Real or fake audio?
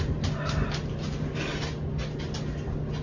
real